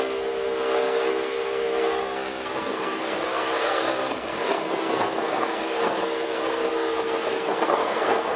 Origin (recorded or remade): remade